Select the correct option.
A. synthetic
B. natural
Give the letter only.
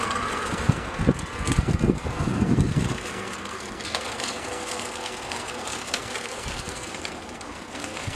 A